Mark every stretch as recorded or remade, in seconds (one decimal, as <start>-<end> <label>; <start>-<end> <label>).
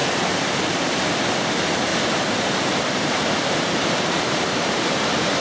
0.0-1.9 recorded; 1.9-5.4 remade